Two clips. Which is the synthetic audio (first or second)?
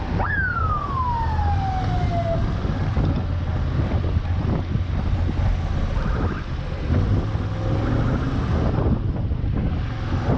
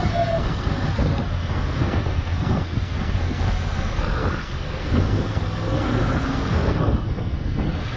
second